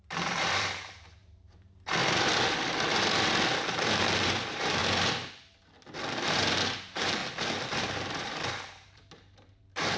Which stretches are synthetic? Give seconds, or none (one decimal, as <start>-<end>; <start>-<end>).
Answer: 0.0-2.0; 3.7-4.8; 6.1-7.2; 7.8-10.0